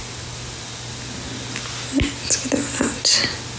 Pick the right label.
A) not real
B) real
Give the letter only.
B